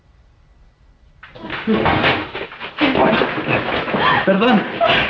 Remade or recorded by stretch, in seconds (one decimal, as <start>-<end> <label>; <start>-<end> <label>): 0.0-1.5 recorded; 1.5-2.5 remade; 2.5-5.1 recorded